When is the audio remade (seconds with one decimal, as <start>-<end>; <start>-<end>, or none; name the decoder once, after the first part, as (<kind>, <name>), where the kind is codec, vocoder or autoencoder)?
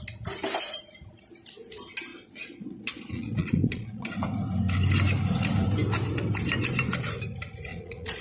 2.1-4.2 (vocoder, Vocos); 7.7-8.2